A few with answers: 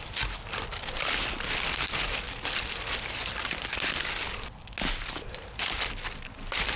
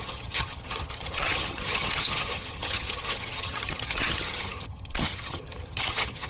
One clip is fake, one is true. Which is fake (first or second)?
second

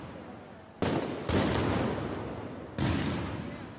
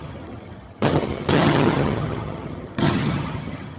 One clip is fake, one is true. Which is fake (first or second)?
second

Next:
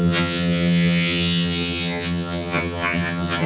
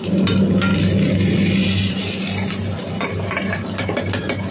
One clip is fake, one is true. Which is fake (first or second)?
first